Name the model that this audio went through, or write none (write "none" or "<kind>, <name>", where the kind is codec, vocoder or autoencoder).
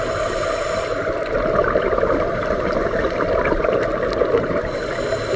none